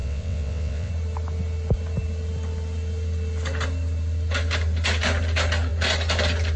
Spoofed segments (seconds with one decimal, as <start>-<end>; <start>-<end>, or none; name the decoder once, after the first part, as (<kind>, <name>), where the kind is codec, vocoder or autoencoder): 0.0-0.9 (vocoder, WaveNeXt)